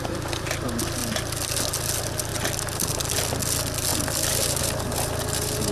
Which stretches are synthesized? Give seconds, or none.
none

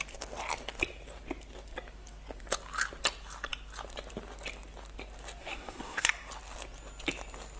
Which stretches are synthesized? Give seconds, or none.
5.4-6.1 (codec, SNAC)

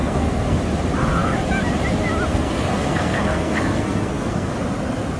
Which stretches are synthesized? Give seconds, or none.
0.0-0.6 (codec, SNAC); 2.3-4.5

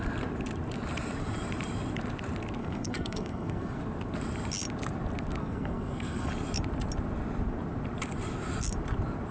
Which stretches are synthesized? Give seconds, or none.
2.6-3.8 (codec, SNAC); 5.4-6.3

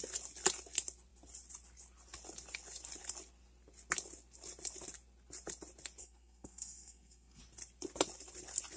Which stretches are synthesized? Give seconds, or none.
6.0-7.4 (codec, SNAC)